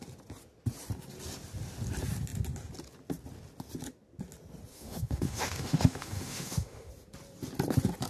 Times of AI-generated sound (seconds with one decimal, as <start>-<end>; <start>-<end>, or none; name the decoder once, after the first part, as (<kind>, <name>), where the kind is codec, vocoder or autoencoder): 4.7-6.9 (autoencoder, DAC-VAE)